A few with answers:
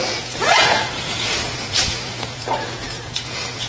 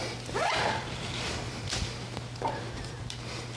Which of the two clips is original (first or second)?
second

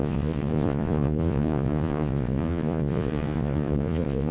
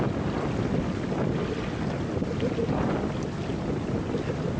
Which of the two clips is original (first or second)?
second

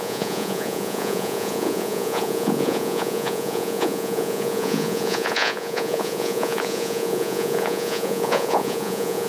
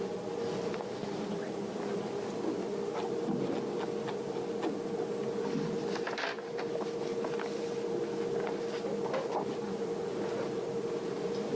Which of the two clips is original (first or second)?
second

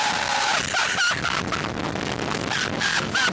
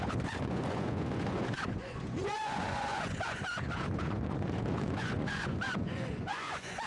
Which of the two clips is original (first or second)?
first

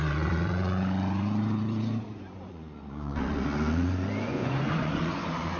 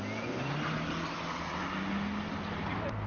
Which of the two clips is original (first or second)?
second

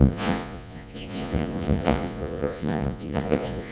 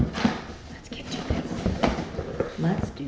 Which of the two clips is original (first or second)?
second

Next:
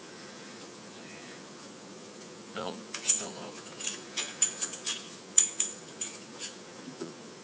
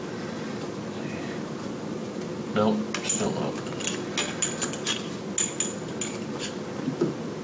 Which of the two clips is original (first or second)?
second